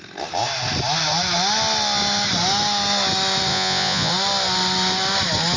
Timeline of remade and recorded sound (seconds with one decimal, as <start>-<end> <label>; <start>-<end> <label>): 0.0-3.5 recorded; 3.5-4.1 remade; 4.1-5.6 recorded